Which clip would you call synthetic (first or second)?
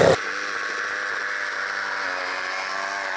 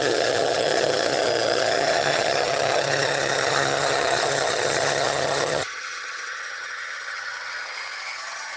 second